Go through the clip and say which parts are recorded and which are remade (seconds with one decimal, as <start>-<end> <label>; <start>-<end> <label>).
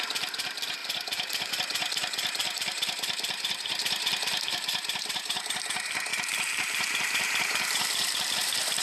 0.0-0.8 recorded; 0.8-1.5 remade; 1.5-2.4 recorded; 2.4-5.5 remade; 5.5-6.1 recorded; 6.1-8.3 remade; 8.3-8.8 recorded